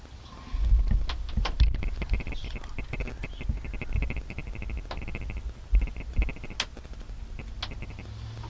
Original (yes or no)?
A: yes